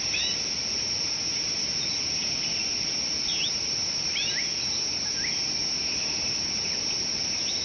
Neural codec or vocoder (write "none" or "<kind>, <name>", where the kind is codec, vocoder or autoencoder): none